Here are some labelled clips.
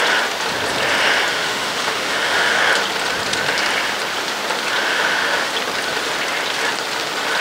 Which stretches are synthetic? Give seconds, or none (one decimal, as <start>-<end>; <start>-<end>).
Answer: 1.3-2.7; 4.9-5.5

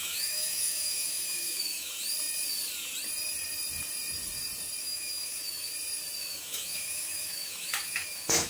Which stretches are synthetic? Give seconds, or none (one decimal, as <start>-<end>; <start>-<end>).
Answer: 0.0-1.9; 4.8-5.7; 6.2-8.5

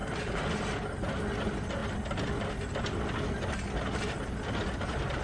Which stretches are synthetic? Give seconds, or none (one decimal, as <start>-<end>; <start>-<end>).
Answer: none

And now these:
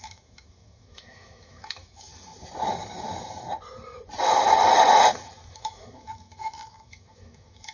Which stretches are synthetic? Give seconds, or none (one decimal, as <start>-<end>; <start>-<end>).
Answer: 0.0-2.1; 5.5-7.7

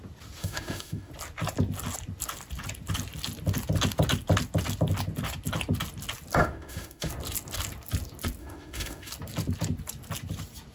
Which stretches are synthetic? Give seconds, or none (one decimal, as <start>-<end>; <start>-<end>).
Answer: 0.4-1.1; 6.4-7.1; 8.4-9.1

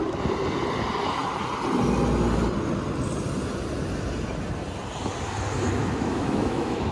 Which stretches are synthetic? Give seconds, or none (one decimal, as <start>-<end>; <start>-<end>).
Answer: 5.8-6.9

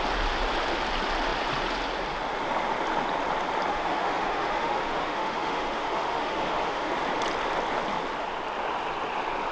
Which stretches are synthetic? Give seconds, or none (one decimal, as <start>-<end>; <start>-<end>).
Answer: 3.7-6.9

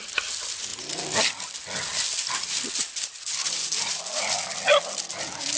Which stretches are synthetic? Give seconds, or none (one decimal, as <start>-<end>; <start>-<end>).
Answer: none